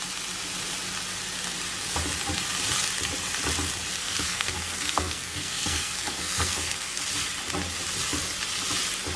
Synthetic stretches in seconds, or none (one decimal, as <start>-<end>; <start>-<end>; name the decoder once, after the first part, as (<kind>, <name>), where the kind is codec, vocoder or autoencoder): 3.9-7.0 (codec, SNAC)

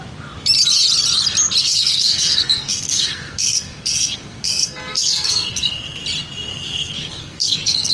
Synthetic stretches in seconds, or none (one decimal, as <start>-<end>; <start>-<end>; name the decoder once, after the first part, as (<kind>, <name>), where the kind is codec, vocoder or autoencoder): 1.6-6.0 (codec, SNAC); 6.5-7.9

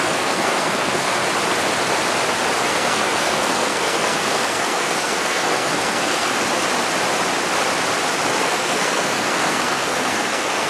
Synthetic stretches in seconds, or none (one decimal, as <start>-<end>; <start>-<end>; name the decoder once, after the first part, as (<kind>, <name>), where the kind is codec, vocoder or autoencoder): 0.0-1.2 (codec, SNAC); 2.6-6.3; 8.4-10.7

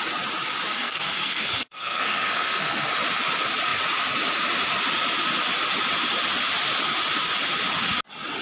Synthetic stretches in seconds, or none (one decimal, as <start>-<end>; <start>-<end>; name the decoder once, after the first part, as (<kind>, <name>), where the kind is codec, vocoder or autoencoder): 0.7-2.9 (codec, SNAC)

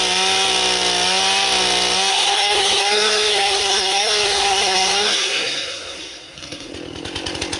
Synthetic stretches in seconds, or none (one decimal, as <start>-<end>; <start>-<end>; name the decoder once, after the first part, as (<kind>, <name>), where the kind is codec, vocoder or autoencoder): 2.1-6.7 (codec, SNAC)

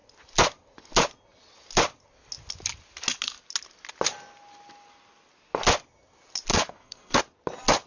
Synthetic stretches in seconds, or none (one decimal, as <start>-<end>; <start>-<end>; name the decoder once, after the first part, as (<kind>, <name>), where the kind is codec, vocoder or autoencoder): 6.5-7.2 (codec, SNAC)

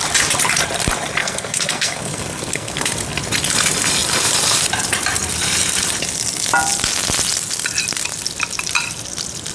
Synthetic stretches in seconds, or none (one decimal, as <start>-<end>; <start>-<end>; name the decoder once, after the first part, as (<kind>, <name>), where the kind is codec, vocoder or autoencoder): 1.2-2.9 (codec, SNAC)

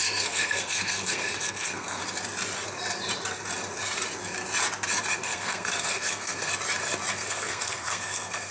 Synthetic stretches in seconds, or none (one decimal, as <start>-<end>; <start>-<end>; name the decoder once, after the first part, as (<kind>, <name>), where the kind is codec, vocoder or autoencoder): 0.0-2.0 (codec, SNAC); 5.2-6.5; 7.1-8.5